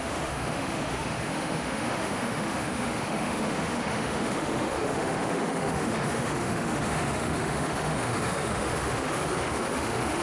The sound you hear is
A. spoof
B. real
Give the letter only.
A